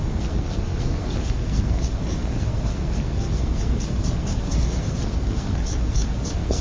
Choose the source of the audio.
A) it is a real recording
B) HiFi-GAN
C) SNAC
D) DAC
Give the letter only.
C